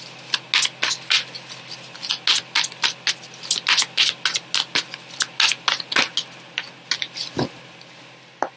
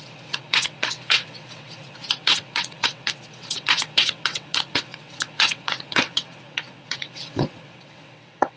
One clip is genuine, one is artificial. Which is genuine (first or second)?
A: first